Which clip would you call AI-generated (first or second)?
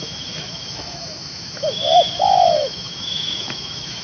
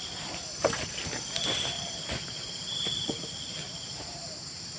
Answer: first